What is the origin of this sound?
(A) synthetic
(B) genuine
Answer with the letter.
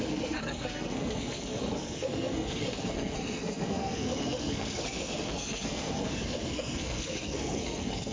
A